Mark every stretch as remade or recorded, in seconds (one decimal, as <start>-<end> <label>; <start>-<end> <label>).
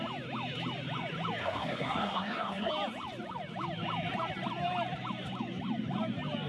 0.0-1.4 recorded; 1.4-2.7 remade; 2.7-6.5 recorded